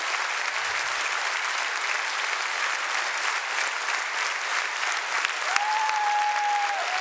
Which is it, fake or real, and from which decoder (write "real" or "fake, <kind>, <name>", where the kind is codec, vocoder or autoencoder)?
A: real